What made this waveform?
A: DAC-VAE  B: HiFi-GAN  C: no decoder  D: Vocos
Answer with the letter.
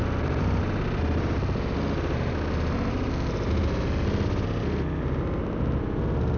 C